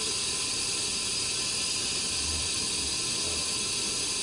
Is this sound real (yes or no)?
yes